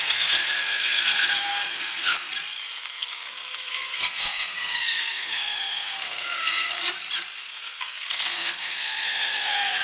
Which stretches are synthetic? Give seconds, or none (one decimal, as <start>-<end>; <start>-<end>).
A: 0.0-2.3; 2.8-6.8; 7.4-9.8